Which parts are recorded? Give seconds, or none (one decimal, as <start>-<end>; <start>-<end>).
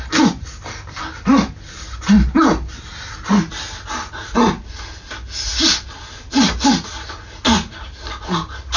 0.0-8.8